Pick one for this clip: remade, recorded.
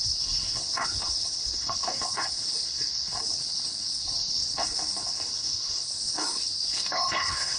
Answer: remade